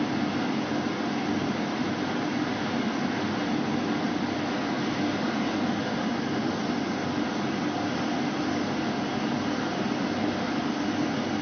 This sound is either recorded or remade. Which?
recorded